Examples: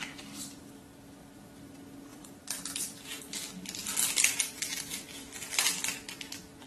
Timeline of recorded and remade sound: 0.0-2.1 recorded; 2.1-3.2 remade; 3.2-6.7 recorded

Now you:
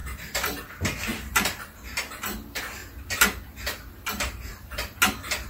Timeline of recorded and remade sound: 0.0-1.1 recorded; 1.1-2.0 remade; 2.0-4.1 recorded; 4.1-4.7 remade; 4.7-5.5 recorded

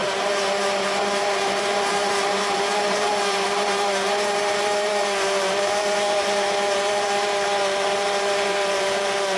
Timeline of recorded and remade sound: 0.0-9.4 remade

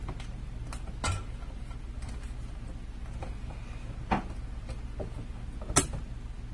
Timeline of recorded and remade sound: 0.0-6.5 recorded